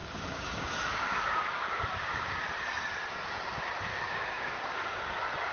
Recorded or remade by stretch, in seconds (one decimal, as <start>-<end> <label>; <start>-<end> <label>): 0.0-2.4 remade; 2.4-3.9 recorded; 3.9-5.0 remade; 5.0-5.5 recorded